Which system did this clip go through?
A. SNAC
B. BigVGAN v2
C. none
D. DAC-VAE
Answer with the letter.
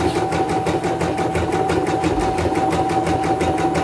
C